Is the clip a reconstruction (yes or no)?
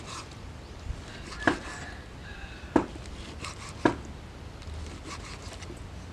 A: no